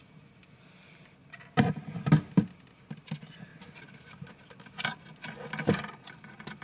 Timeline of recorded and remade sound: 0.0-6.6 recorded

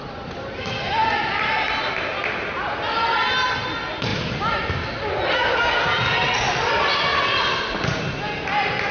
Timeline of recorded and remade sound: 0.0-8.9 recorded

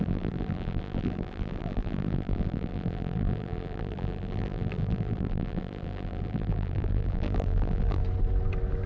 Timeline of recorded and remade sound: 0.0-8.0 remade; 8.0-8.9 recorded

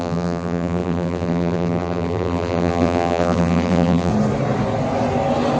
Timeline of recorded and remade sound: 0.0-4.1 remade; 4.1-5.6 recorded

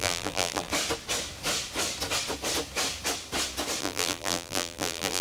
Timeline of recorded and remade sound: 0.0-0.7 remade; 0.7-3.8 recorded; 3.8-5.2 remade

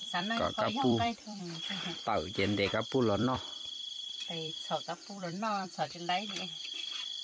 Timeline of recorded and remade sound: 0.0-1.4 remade; 1.4-2.7 recorded; 2.7-5.9 remade; 5.9-7.2 recorded

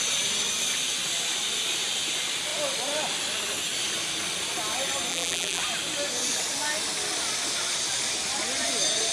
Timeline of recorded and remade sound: 0.0-5.1 recorded; 5.1-5.6 remade; 5.6-9.1 recorded